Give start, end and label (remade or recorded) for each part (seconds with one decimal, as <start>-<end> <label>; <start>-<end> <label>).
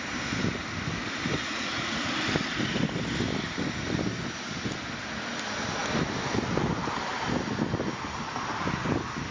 0.0-1.4 recorded; 1.4-2.1 remade; 2.1-9.3 recorded